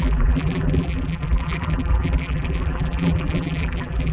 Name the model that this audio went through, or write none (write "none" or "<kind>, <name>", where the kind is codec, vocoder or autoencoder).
vocoder, BigVGAN v2